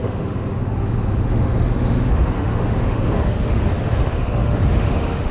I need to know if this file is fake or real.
fake